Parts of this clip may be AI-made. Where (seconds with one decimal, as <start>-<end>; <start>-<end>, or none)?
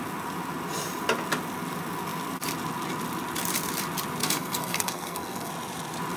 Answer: 4.2-5.5